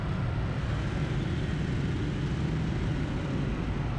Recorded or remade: recorded